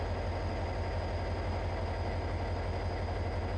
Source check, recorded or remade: recorded